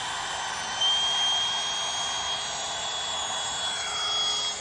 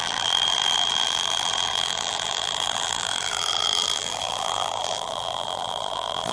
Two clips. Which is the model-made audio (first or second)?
second